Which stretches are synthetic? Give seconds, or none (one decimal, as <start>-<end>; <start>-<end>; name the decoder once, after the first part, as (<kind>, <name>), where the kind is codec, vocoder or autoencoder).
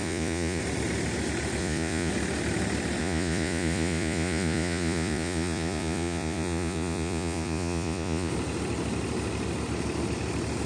0.0-0.6 (vocoder, Vocos); 1.6-2.1; 3.0-8.3